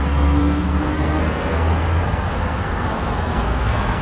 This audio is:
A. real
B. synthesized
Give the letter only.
B